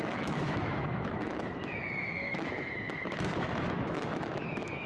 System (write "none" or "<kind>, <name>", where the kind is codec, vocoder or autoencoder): autoencoder, DAC-VAE